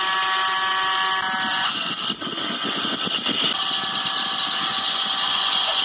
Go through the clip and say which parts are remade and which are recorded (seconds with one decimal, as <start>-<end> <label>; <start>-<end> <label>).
0.0-1.5 recorded; 1.5-2.0 remade; 2.0-4.7 recorded; 4.7-5.8 remade